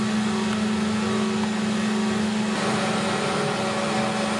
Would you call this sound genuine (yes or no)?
yes